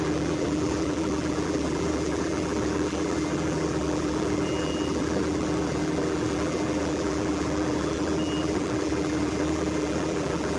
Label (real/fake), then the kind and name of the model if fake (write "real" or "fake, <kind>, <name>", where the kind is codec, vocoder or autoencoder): fake, vocoder, BigVGAN v2